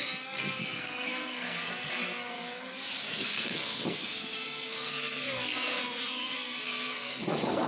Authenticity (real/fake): fake